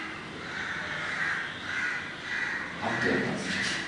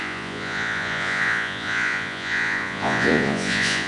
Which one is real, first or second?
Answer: first